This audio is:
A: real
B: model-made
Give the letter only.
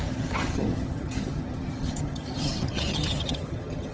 B